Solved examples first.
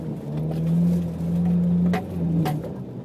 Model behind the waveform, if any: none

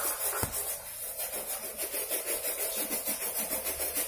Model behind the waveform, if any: none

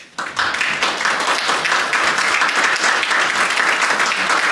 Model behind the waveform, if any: none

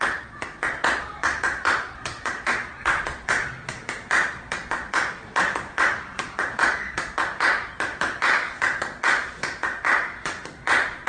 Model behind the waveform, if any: vocoder, Vocos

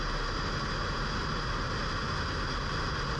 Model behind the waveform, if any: none